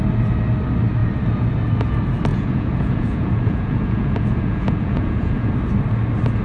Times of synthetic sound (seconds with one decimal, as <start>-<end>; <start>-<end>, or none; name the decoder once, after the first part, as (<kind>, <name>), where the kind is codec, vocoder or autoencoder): 2.3-5.5 (vocoder, Vocos)